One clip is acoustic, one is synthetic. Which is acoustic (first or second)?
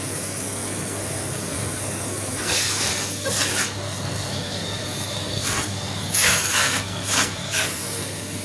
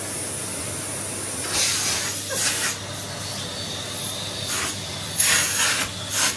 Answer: second